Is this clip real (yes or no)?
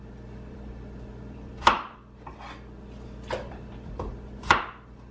no